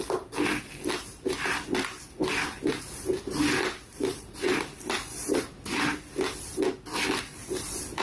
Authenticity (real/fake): real